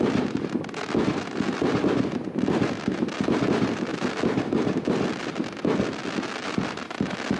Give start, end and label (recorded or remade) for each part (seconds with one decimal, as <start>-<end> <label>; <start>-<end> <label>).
0.0-7.4 recorded